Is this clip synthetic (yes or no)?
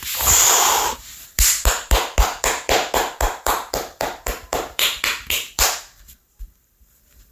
yes